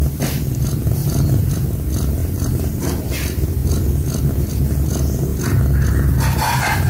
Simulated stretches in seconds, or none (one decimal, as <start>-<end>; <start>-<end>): 1.0-1.5; 2.2-3.1